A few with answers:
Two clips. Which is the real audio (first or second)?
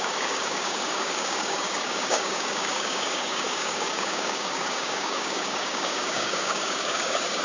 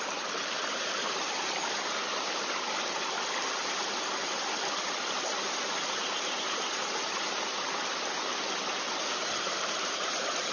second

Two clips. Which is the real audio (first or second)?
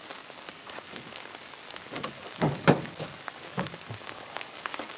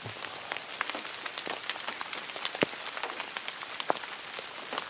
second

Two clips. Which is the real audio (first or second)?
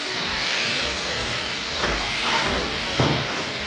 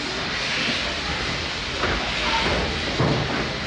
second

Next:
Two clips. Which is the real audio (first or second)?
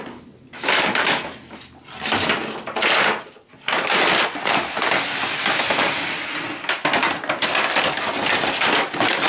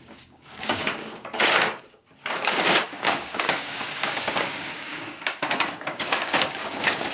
first